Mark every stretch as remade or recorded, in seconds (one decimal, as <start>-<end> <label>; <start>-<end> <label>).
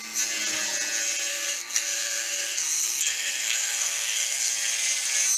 0.0-1.3 recorded; 1.3-4.5 remade; 4.5-5.4 recorded